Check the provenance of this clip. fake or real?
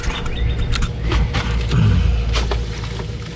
real